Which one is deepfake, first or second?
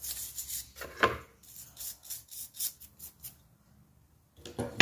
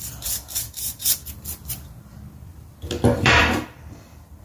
second